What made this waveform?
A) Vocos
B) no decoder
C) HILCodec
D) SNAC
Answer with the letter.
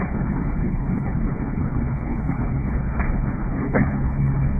C